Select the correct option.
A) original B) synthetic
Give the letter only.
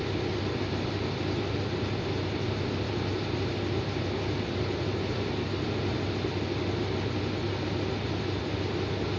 A